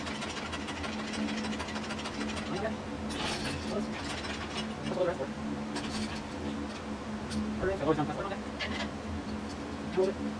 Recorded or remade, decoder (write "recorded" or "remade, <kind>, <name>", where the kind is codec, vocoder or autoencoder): recorded